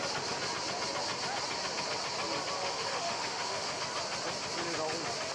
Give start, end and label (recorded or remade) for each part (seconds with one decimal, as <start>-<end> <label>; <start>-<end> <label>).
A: 0.0-2.6 recorded; 2.6-3.8 remade; 3.8-5.3 recorded